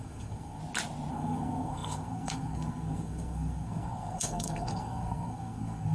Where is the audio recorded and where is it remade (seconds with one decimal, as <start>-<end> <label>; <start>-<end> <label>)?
0.0-0.6 remade; 0.6-1.1 recorded; 1.1-5.9 remade